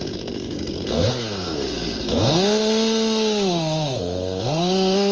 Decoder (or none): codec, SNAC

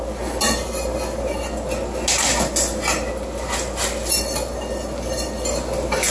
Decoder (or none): none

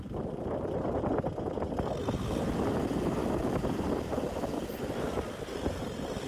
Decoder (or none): none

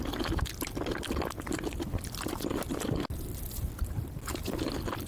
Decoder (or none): none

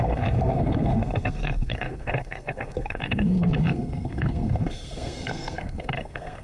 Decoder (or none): codec, SNAC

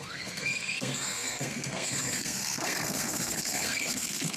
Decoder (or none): codec, SNAC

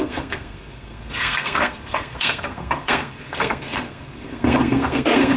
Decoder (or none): codec, SNAC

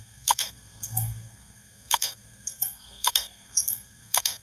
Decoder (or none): codec, SNAC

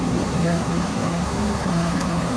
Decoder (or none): codec, SNAC